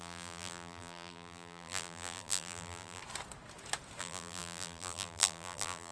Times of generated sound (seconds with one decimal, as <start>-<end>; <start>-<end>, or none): 0.0-3.0; 4.0-5.9